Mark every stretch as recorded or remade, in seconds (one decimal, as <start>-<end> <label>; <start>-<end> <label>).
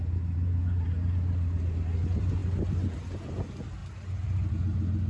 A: 0.0-5.1 recorded